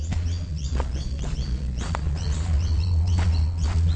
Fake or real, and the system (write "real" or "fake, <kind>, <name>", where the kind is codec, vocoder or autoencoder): fake, vocoder, Vocos